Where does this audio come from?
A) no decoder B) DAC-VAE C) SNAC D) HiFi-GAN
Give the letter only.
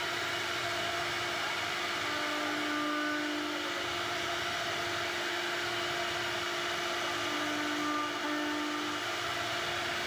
A